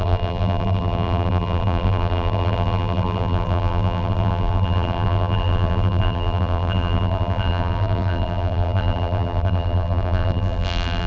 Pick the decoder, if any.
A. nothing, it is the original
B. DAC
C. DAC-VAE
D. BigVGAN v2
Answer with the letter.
D